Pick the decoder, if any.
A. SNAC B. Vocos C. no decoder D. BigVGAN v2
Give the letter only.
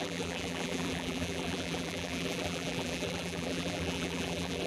D